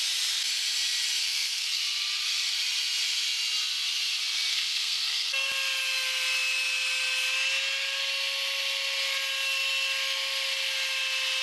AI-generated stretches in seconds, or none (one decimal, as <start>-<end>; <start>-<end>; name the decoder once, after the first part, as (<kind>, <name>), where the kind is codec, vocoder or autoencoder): 1.2-1.8 (codec, SNAC); 4.5-5.5